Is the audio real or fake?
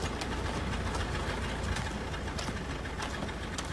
real